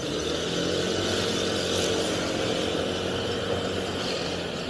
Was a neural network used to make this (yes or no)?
no